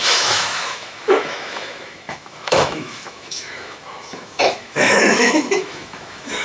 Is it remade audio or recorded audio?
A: remade